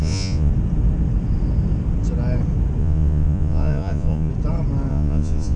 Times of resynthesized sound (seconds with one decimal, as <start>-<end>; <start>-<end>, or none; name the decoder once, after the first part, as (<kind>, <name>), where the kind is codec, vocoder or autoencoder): 0.0-0.5 (vocoder, Vocos); 2.8-4.3; 4.9-5.6